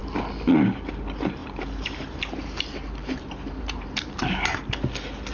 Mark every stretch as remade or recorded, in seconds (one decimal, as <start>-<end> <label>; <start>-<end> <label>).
0.0-1.4 recorded; 1.4-4.6 remade; 4.6-5.3 recorded